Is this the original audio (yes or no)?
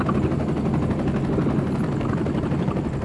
yes